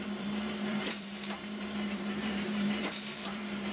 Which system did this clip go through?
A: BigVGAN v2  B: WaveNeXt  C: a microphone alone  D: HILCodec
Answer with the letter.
A